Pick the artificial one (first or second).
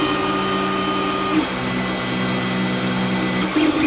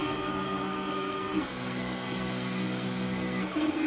second